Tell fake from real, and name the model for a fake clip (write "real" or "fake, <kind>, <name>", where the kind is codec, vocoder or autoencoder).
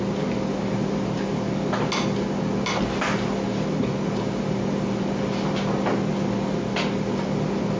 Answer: real